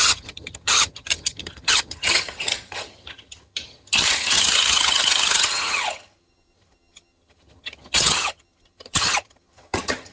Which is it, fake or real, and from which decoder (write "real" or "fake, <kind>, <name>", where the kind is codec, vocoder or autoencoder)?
fake, vocoder, HiFi-GAN